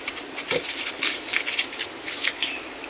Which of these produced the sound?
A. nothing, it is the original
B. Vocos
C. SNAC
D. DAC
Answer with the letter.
A